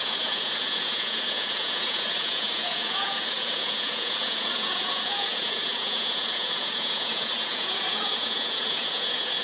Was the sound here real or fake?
fake